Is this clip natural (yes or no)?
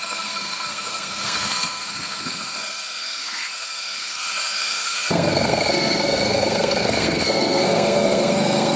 no